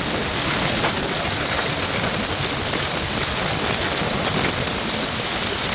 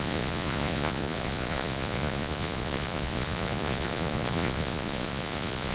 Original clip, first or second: first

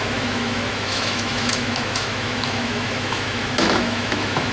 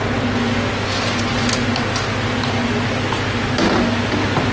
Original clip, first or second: second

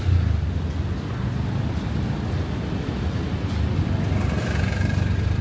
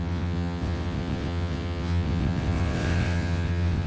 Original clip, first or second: first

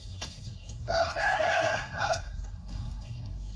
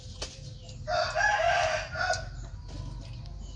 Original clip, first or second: second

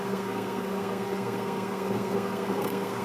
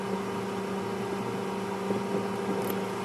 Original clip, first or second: second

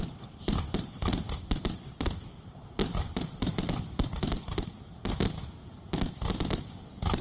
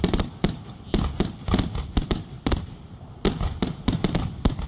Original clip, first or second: second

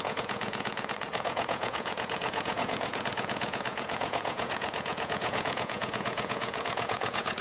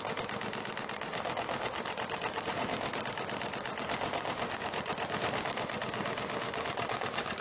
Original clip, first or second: second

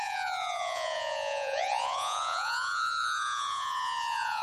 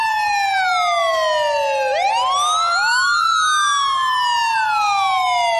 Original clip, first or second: second